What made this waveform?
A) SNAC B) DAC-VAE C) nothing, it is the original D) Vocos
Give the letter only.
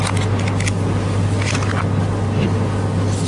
C